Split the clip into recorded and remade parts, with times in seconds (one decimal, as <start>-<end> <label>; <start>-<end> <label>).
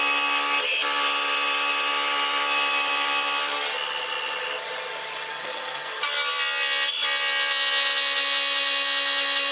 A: 0.0-5.3 recorded; 5.3-6.0 remade; 6.0-9.5 recorded